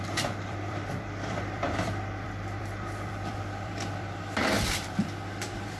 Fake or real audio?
fake